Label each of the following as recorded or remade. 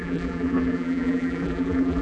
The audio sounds remade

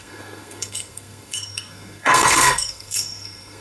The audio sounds remade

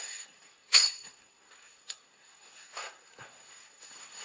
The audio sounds remade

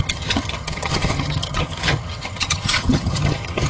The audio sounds remade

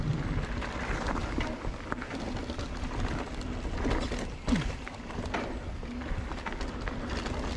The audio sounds recorded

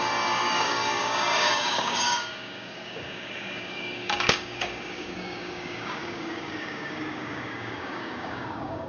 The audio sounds remade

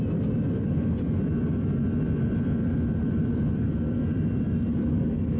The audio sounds recorded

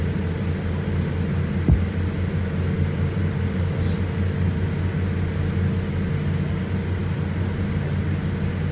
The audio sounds recorded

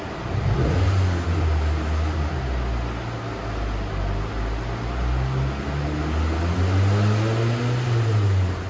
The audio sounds recorded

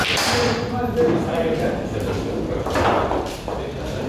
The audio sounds remade